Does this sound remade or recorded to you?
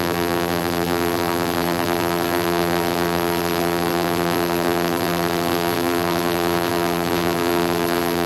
remade